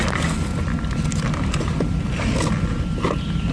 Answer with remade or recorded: recorded